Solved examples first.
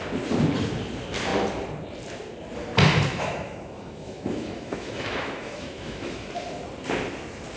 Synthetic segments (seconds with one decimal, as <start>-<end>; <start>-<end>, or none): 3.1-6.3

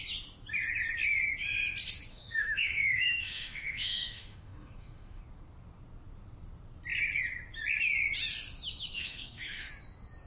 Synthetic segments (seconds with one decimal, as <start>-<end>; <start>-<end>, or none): 2.1-5.2; 8.9-9.7

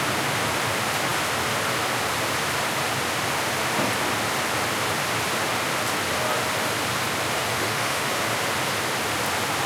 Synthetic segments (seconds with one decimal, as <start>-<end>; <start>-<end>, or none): 7.5-8.1